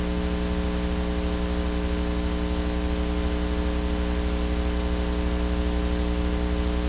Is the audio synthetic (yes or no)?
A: no